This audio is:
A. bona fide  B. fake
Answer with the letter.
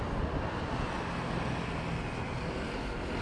A